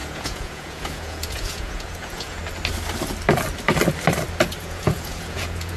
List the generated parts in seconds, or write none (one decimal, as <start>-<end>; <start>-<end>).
0.0-2.4; 4.6-5.8

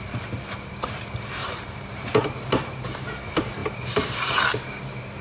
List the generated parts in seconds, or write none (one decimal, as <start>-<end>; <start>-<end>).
1.4-3.1; 3.6-4.3

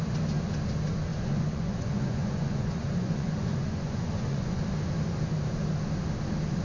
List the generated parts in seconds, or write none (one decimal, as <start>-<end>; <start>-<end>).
1.1-4.6